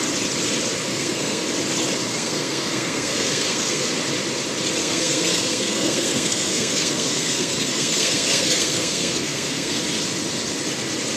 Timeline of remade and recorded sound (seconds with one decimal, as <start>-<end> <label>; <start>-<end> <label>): 0.0-0.9 recorded; 0.9-1.4 remade; 1.4-2.1 recorded; 2.1-3.9 remade; 3.9-4.8 recorded; 4.8-9.8 remade; 9.8-11.2 recorded